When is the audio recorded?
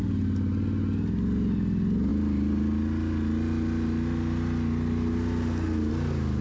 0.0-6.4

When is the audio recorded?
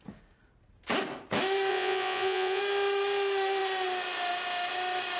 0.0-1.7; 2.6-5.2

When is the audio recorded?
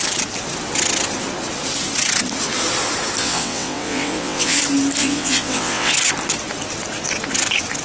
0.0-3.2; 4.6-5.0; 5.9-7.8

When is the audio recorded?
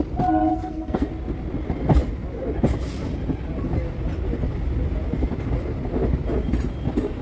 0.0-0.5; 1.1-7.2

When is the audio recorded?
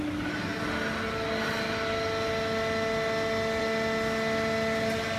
0.0-5.2